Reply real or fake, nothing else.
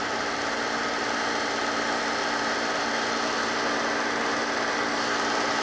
real